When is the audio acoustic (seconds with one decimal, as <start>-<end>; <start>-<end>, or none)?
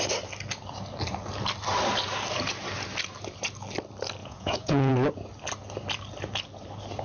0.0-4.2; 4.9-7.0